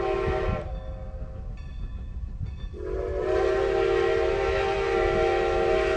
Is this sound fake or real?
real